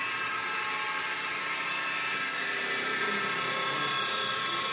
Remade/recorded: recorded